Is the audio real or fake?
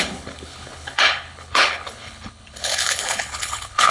fake